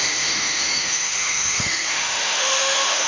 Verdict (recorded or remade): remade